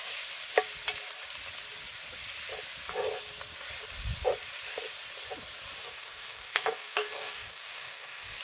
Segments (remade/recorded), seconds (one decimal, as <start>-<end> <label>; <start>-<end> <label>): 0.0-5.8 recorded; 5.8-8.4 remade